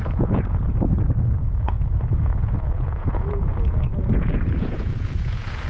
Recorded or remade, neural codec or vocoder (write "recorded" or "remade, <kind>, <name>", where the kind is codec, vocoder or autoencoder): remade, vocoder, Vocos